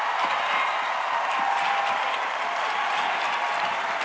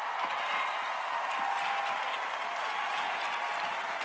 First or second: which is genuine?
second